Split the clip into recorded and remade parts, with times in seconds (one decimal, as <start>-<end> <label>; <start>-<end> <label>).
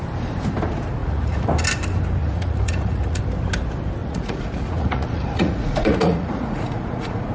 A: 0.0-1.0 recorded; 1.0-1.5 remade; 1.5-2.2 recorded; 2.2-3.2 remade; 3.2-4.0 recorded; 4.0-7.3 remade